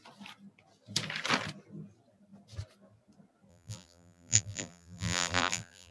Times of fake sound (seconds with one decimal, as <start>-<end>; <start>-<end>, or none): 3.5-5.9